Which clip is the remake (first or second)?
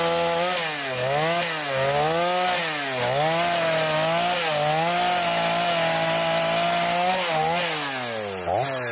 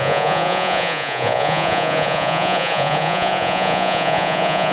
second